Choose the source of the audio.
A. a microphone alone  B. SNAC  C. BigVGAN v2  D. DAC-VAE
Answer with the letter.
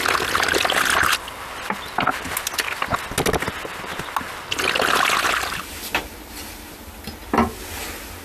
A